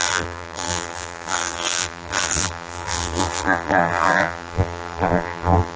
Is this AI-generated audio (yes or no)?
yes